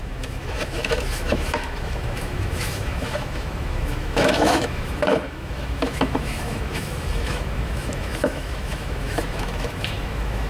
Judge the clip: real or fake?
fake